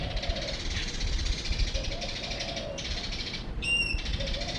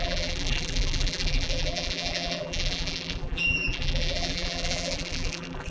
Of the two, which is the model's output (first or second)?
second